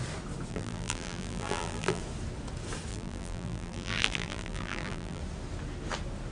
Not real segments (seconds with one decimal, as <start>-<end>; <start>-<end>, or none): 0.5-2.0; 2.9-5.2